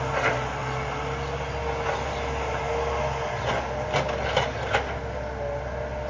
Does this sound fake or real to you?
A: real